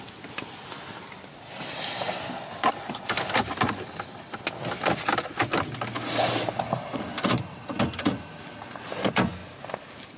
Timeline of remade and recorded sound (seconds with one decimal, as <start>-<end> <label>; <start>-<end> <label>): 0.0-10.2 recorded